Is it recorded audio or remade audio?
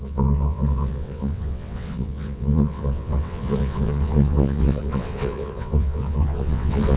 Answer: remade